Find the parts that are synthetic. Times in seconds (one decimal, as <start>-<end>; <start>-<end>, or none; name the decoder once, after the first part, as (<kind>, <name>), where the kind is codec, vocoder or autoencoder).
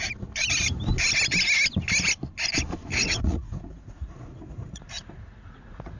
2.9-6.0 (vocoder, Vocos)